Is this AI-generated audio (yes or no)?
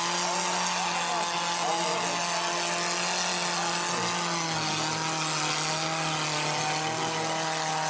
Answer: no